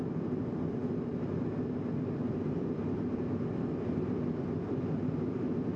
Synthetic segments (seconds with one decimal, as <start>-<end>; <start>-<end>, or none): none